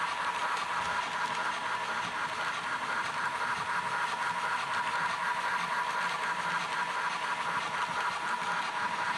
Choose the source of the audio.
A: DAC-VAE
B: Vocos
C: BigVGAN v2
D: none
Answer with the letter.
D